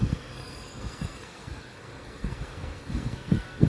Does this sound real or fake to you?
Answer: fake